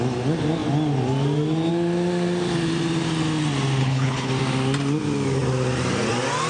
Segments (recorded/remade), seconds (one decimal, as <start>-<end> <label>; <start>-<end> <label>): 0.0-3.8 recorded; 3.8-4.3 remade; 4.3-6.5 recorded